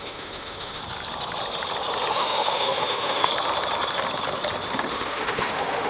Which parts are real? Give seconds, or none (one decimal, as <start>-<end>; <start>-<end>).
0.8-2.1; 3.3-4.9